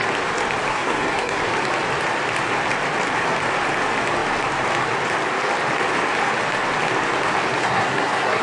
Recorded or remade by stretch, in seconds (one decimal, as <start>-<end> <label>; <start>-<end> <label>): 0.0-0.7 recorded; 0.7-1.4 remade; 1.4-7.6 recorded; 7.6-8.4 remade